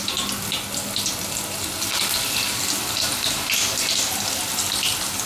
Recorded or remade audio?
recorded